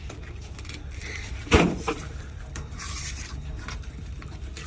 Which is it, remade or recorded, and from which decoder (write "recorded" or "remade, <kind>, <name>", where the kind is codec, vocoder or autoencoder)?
remade, vocoder, BigVGAN v2